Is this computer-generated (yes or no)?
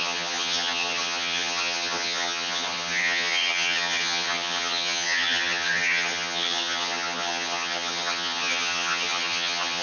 yes